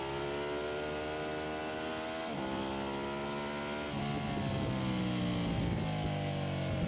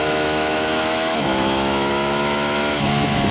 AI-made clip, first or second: second